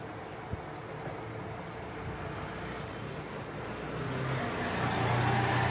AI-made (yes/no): no